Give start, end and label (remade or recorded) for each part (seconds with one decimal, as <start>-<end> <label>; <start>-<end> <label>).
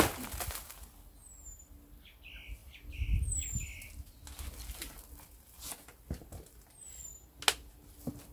0.0-8.3 recorded